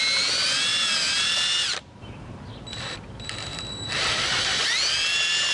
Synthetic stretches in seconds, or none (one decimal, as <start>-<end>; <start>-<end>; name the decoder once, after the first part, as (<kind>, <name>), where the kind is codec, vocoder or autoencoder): none